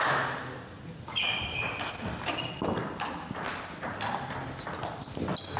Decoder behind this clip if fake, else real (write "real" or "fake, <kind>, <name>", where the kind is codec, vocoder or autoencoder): real